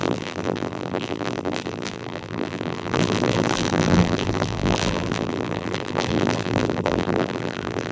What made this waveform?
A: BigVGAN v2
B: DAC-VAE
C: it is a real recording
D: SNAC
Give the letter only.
A